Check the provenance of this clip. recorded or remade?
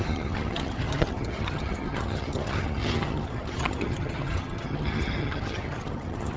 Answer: remade